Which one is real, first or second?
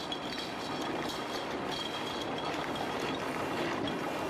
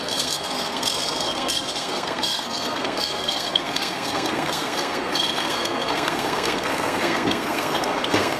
first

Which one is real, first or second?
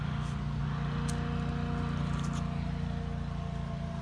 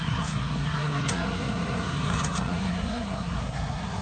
first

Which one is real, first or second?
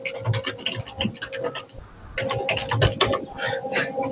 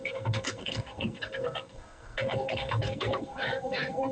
first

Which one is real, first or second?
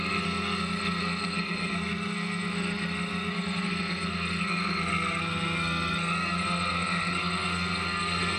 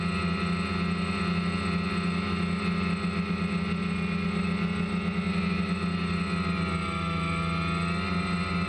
second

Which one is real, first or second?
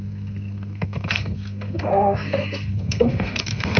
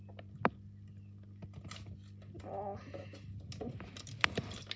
second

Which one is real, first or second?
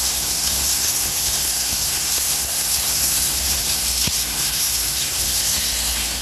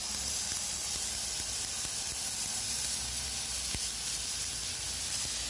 second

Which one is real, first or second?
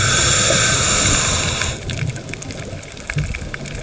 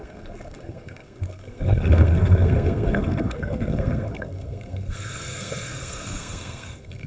first